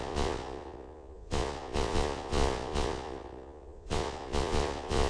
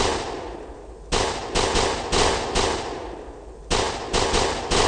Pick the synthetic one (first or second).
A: first